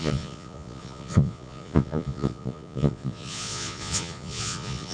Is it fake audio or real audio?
fake